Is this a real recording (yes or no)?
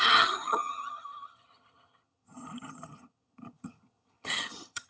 no